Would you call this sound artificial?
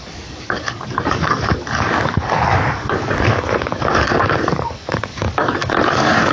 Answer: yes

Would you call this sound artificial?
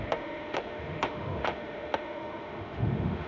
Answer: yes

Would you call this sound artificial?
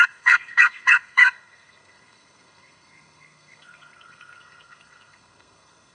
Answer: yes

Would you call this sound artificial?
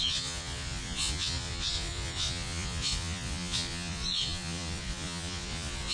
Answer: yes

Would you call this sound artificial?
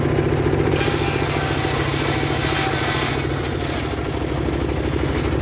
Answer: no